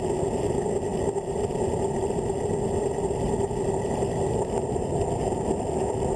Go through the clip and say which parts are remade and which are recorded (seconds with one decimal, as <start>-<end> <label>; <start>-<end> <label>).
0.0-6.2 recorded

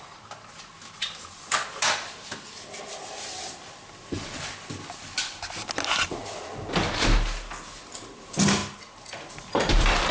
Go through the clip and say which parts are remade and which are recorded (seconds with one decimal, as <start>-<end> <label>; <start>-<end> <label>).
0.0-10.1 recorded

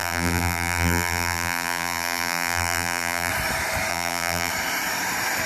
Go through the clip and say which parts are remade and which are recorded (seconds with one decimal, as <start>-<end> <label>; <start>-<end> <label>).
0.0-3.3 remade; 3.3-3.9 recorded; 3.9-4.5 remade; 4.5-5.5 recorded

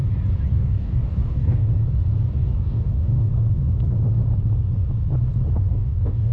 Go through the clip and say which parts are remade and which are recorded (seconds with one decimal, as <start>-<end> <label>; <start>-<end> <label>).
0.0-0.5 recorded; 0.5-1.7 remade; 1.7-2.3 recorded; 2.3-3.3 remade; 3.3-5.7 recorded; 5.7-6.3 remade

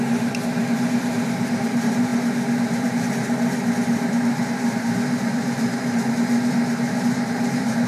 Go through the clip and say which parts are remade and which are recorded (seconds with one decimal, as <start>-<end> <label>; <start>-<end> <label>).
0.0-2.1 remade; 2.1-2.8 recorded; 2.8-7.9 remade